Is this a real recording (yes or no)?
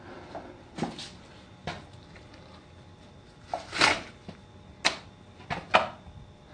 yes